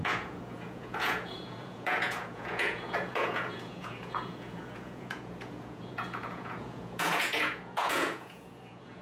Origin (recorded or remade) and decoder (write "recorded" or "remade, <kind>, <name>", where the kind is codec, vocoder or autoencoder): remade, vocoder, Vocos